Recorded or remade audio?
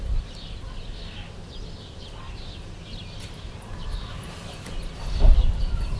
recorded